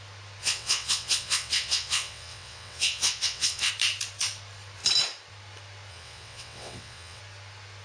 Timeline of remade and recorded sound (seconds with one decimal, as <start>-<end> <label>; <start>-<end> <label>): 0.0-0.4 recorded; 0.4-3.7 remade; 3.7-5.9 recorded; 5.9-7.2 remade; 7.2-7.8 recorded